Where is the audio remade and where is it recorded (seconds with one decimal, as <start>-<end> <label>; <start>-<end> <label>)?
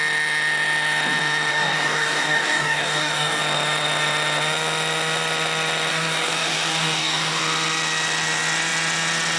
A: 0.0-1.5 recorded; 1.5-3.4 remade; 3.4-5.9 recorded; 5.9-7.4 remade; 7.4-9.4 recorded